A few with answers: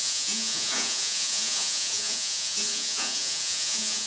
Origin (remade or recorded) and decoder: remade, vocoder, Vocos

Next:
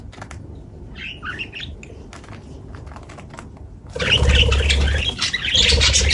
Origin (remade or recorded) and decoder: recorded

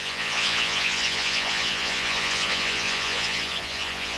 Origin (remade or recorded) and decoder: remade, vocoder, Vocos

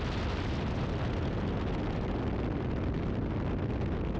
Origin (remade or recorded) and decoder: recorded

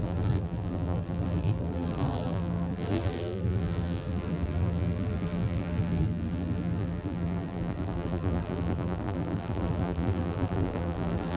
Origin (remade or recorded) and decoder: remade, vocoder, BigVGAN v2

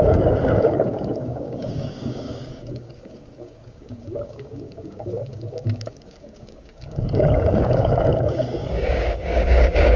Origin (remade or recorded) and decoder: remade, codec, DAC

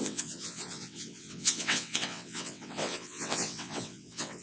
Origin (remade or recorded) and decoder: remade, vocoder, WaveNeXt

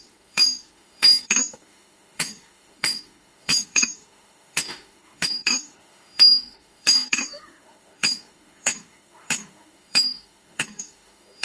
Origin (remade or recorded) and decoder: remade, autoencoder, DAC-VAE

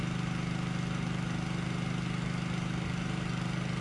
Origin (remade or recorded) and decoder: recorded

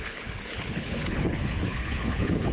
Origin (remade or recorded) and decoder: remade, codec, HILCodec